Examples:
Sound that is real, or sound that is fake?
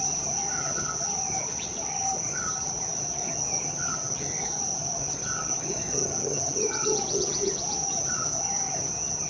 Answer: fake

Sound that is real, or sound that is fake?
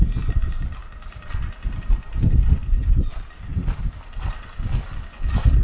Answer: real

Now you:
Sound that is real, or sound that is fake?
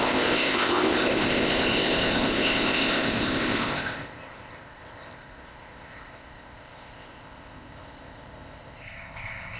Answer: fake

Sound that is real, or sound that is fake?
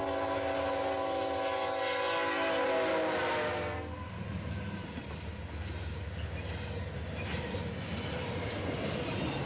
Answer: real